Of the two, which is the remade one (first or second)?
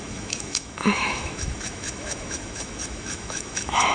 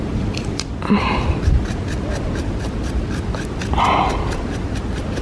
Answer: first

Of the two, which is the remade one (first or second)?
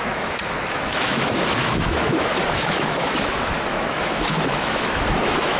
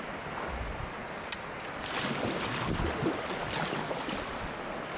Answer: first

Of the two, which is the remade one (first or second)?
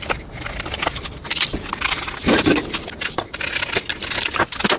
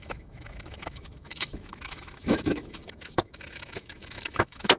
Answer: second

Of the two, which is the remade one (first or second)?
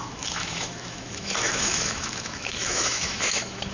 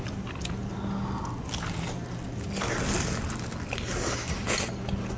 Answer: first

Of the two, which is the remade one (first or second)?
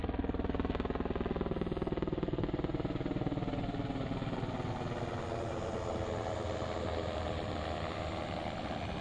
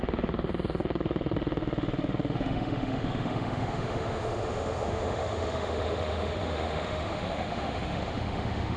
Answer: second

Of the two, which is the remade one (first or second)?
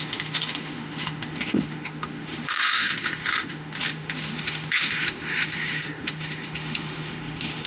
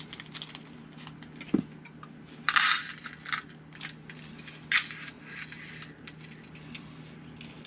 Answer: first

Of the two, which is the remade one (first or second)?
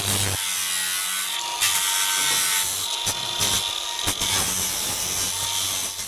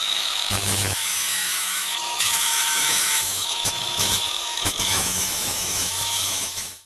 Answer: second